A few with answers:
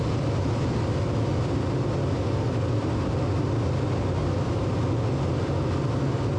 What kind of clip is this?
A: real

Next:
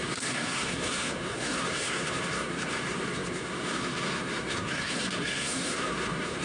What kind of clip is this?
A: fake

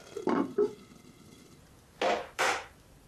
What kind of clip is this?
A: real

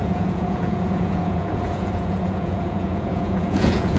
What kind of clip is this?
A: fake